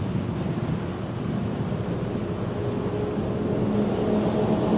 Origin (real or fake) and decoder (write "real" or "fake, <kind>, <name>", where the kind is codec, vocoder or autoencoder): real